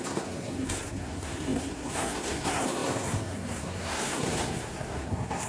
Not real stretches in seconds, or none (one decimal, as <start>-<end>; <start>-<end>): 0.0-5.5